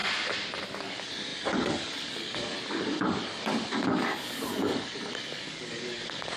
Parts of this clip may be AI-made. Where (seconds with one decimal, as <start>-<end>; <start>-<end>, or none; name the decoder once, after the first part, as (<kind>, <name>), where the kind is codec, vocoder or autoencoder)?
0.8-6.4 (codec, DAC)